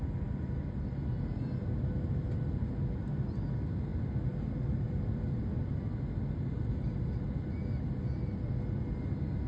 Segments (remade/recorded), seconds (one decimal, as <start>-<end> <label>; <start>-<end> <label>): 0.0-9.5 recorded